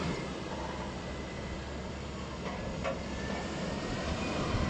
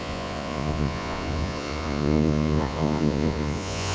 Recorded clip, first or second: first